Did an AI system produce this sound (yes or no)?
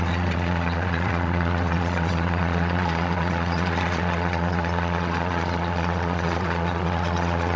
yes